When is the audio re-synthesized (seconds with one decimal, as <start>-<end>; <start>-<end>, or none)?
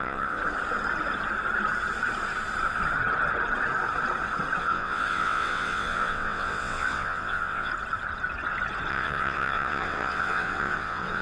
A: 0.0-0.4; 4.6-7.7; 8.9-11.2